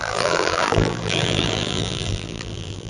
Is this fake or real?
fake